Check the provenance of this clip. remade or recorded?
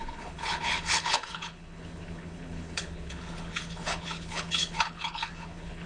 remade